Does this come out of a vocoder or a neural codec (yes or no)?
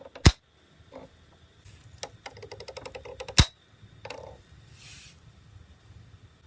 no